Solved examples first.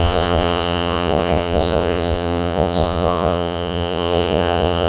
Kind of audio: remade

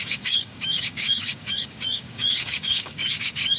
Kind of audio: remade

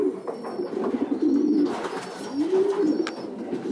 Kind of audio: recorded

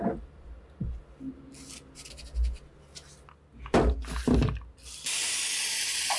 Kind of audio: recorded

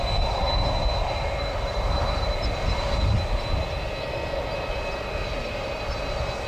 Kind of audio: recorded